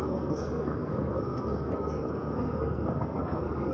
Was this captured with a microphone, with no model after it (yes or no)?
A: no